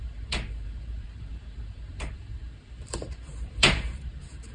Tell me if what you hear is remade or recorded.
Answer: remade